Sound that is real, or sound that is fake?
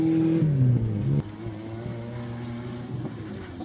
real